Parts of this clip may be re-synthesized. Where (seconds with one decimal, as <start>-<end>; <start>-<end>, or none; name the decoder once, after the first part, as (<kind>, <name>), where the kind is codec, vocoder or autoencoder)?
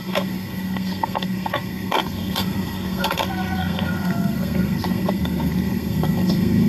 0.0-6.7 (codec, SNAC)